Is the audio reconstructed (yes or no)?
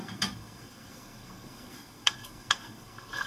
yes